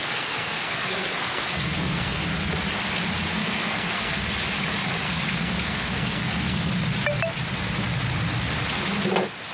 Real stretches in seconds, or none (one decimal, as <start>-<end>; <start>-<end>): 2.2-3.4; 4.2-5.0; 6.7-9.5